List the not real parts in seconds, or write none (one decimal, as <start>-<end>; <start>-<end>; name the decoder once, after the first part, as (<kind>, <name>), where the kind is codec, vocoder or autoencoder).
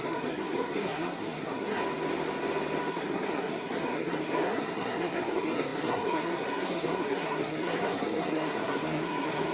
0.0-1.8 (codec, SNAC); 2.9-9.5